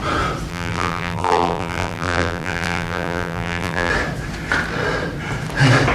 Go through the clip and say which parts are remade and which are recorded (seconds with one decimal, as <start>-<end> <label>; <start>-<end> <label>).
0.0-0.5 recorded; 0.5-3.9 remade; 3.9-5.9 recorded